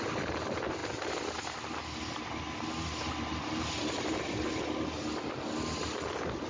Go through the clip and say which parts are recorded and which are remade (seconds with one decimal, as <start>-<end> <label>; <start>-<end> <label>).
0.0-6.5 recorded